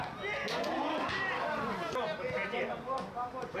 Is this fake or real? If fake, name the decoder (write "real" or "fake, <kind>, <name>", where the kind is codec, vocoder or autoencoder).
real